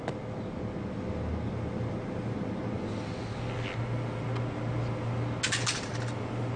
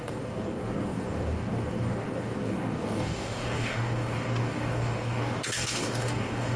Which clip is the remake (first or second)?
second